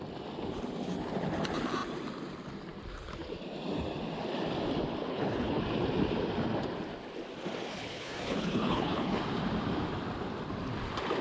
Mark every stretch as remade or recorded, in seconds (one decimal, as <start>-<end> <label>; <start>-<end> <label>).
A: 0.0-5.1 recorded; 5.1-5.6 remade; 5.6-7.7 recorded; 7.7-9.2 remade; 9.2-11.2 recorded